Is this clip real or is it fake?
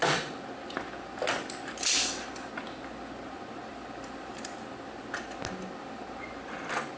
real